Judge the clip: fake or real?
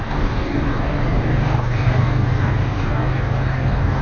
fake